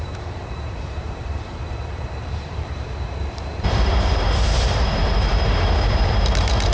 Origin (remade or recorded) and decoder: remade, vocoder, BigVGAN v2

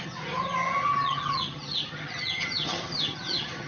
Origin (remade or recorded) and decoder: remade, vocoder, HiFi-GAN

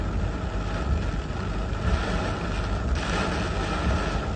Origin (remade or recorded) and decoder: recorded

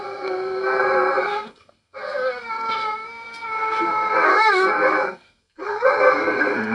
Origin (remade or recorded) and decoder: remade, codec, SNAC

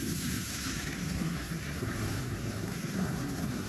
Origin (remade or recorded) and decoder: remade, codec, SNAC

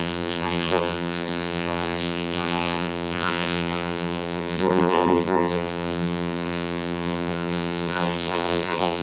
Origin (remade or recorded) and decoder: remade, vocoder, BigVGAN v2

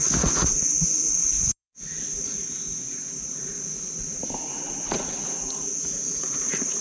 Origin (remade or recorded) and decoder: remade, vocoder, Vocos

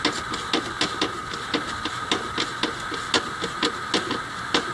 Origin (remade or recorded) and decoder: recorded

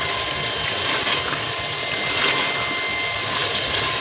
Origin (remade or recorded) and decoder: recorded